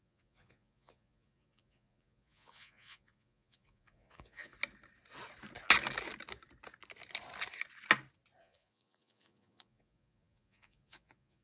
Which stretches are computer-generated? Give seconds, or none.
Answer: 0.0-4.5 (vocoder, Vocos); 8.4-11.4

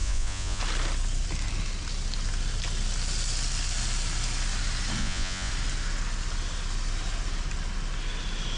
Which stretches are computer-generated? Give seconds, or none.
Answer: 0.0-0.6 (vocoder, Vocos); 5.0-5.5

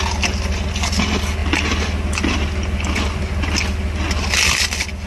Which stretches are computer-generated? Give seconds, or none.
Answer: 0.0-5.1 (vocoder, BigVGAN v2)